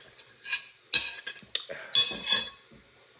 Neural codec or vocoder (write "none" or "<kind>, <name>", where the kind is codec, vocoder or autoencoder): none